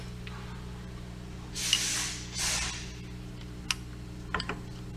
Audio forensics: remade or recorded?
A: recorded